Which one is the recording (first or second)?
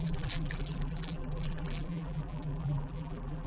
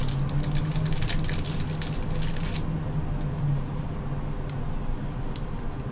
second